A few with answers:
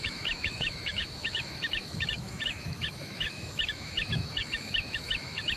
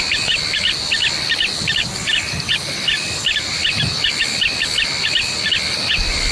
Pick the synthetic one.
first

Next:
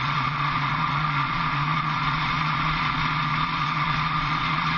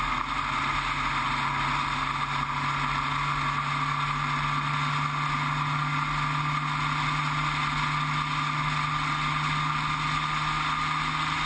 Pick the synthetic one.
first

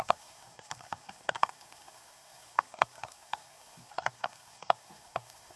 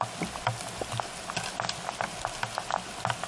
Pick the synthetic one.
first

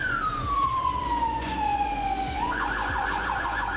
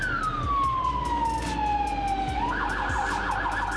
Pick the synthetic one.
first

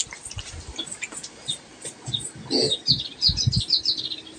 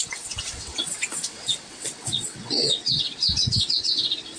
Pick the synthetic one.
second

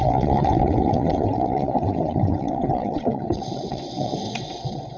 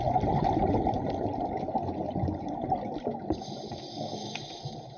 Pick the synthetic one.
first